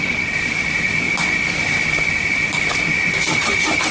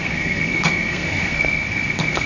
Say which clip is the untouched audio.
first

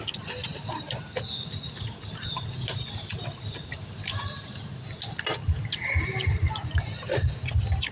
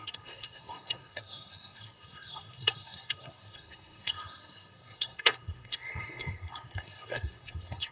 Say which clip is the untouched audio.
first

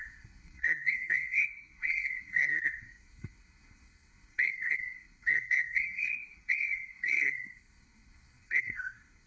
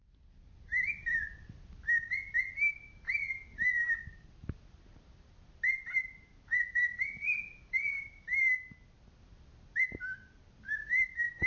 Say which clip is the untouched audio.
second